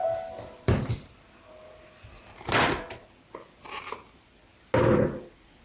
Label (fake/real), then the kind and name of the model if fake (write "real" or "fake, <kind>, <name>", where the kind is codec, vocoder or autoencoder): real